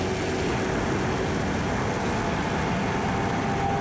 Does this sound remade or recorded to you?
recorded